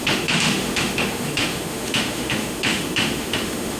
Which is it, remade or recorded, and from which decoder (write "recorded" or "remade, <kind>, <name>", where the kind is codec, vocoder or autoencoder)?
remade, autoencoder, DAC-VAE